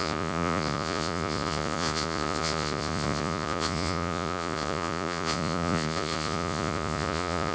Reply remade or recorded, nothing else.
remade